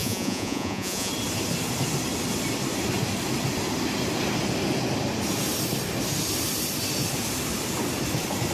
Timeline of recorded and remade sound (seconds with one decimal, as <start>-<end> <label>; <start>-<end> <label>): 0.0-1.1 remade; 1.1-8.5 recorded